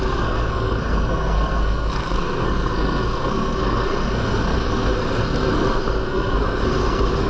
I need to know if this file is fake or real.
fake